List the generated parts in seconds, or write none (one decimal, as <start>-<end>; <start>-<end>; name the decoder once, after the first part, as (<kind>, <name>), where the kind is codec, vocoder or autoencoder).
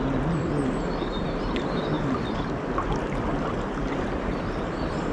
1.2-1.8 (vocoder, BigVGAN v2); 3.3-4.4